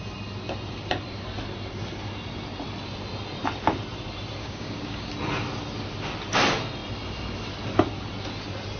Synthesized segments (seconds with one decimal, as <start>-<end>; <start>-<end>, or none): 4.4-5.1